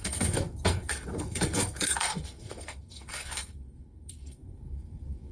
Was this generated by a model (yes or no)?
yes